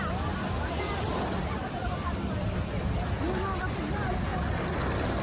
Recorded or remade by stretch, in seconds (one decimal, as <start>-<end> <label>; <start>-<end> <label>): 0.0-5.2 recorded